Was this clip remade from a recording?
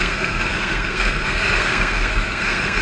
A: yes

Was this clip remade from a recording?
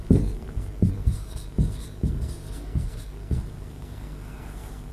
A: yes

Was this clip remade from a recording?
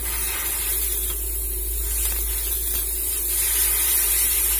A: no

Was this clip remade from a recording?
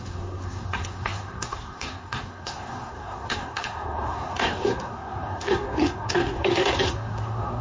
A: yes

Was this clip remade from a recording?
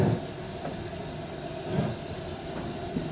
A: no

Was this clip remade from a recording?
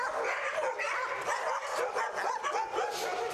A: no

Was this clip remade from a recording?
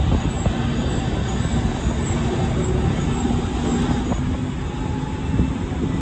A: no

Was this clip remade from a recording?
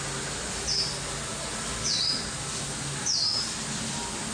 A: no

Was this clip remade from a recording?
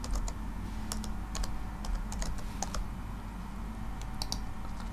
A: no